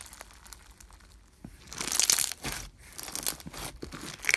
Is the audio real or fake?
real